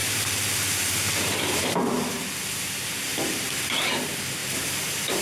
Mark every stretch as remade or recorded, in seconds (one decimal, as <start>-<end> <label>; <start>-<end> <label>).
0.0-2.3 remade; 2.3-4.4 recorded; 4.4-5.2 remade